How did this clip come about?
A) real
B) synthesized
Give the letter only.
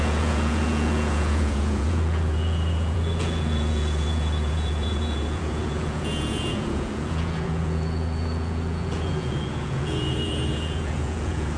B